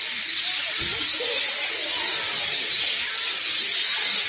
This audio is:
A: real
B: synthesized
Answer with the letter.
A